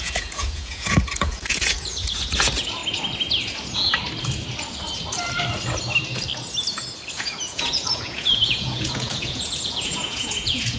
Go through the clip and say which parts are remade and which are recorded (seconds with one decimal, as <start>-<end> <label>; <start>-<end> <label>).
0.0-2.8 remade; 2.8-7.1 recorded; 7.1-10.8 remade